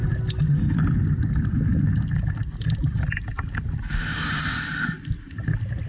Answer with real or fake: real